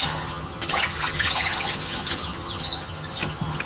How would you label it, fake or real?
fake